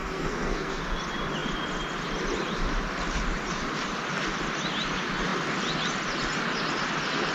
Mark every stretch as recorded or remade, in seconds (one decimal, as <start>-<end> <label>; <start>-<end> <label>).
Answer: 0.0-0.8 remade; 0.8-7.3 recorded